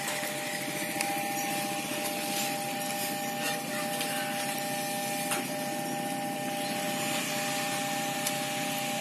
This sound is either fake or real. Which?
real